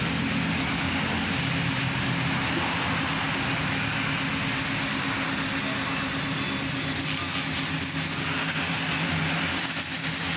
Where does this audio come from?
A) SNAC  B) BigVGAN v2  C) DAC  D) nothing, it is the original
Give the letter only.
D